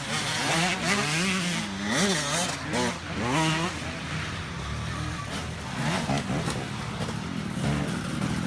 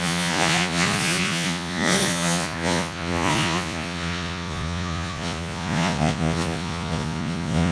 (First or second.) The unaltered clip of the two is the first